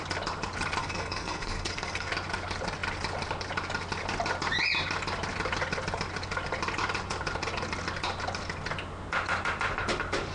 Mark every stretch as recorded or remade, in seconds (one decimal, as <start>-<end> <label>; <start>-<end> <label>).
0.0-0.8 recorded; 0.8-2.1 remade; 2.1-10.3 recorded